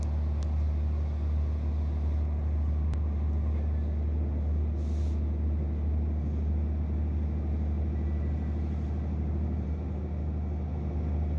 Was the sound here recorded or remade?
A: recorded